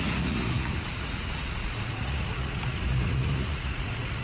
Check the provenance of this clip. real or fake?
fake